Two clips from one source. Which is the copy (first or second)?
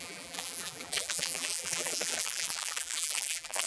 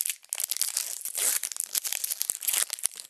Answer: first